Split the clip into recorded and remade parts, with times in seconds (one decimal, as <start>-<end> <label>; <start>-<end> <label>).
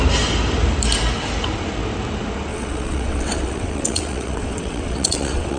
0.0-2.5 recorded; 2.5-5.6 remade